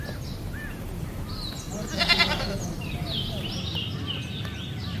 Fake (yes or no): no